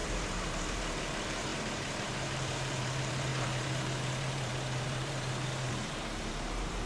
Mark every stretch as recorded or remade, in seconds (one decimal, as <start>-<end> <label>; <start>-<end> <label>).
0.0-6.9 remade

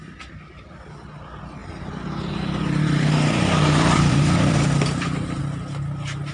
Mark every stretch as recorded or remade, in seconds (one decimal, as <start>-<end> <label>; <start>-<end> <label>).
0.0-1.6 recorded; 1.6-5.4 remade; 5.4-6.3 recorded

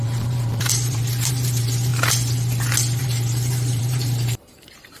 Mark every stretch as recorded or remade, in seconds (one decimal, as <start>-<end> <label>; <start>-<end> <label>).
0.0-1.9 remade; 1.9-3.0 recorded; 3.0-5.0 remade

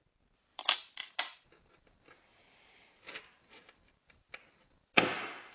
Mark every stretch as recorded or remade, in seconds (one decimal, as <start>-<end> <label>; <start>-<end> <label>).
0.0-0.5 recorded; 0.5-1.2 remade; 1.2-2.3 recorded; 2.3-4.2 remade; 4.2-5.5 recorded